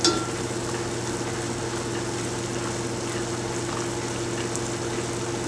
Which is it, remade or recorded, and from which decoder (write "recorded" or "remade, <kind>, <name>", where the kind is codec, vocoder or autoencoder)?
recorded